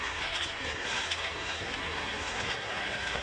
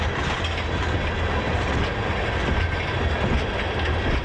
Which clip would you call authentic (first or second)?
second